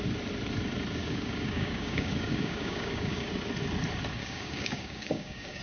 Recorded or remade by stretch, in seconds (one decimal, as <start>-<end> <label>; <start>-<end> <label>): 0.0-1.0 recorded; 1.0-3.3 remade; 3.3-4.2 recorded; 4.2-5.6 remade